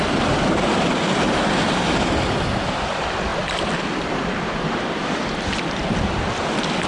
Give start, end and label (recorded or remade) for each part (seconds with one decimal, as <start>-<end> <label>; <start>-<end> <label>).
0.0-0.7 remade; 0.7-2.8 recorded; 2.8-6.9 remade